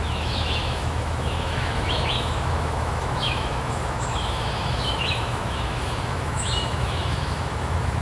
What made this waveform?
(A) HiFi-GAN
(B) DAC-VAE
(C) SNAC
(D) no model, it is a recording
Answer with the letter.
B